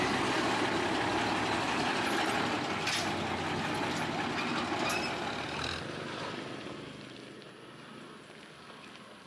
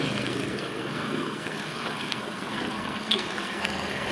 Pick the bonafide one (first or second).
first